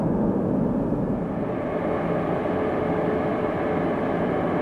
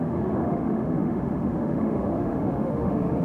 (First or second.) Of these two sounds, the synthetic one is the second